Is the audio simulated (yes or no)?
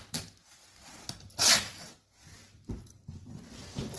no